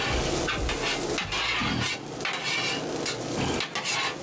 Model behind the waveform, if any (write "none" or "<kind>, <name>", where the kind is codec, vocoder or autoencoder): none